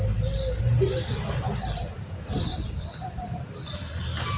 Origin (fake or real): real